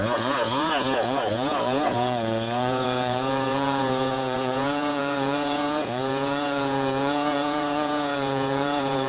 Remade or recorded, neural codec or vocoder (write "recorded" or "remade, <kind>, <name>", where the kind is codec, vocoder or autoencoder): remade, vocoder, Vocos